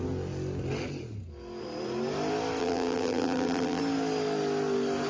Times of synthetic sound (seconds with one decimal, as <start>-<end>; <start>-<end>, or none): 2.6-3.8